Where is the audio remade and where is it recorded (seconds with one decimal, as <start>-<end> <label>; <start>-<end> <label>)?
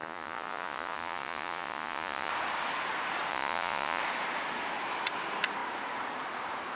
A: 0.0-2.3 remade; 2.3-3.3 recorded; 3.3-4.0 remade; 4.0-6.8 recorded